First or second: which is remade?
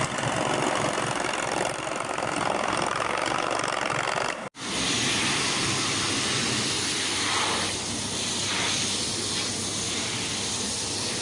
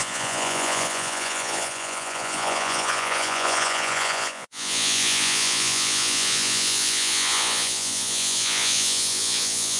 second